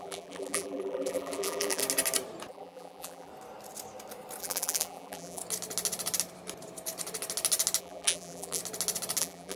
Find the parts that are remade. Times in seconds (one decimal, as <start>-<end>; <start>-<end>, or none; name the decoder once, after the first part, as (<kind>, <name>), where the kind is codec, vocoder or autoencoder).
0.0-1.8 (vocoder, BigVGAN v2); 2.5-3.3; 4.4-5.4; 7.8-8.6; 9.2-9.6

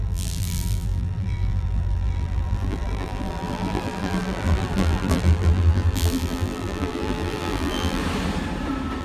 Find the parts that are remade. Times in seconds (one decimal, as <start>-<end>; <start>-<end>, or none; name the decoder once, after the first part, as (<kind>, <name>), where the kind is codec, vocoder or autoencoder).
0.0-8.0 (vocoder, BigVGAN v2)